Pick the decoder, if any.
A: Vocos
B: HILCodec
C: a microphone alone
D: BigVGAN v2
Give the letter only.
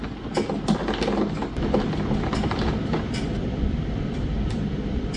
C